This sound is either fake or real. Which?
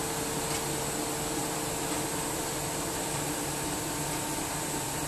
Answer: real